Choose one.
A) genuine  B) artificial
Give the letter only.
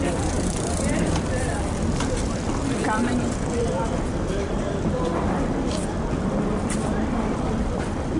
B